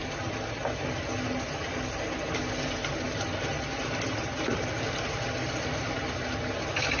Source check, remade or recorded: recorded